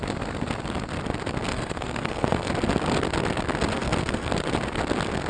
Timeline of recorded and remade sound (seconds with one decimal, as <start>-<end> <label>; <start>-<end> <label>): 0.0-1.5 recorded; 1.5-2.5 remade; 2.5-3.8 recorded; 3.8-4.3 remade; 4.3-5.3 recorded